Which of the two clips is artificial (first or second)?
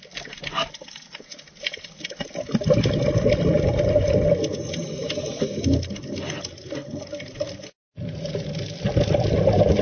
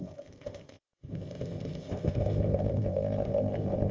second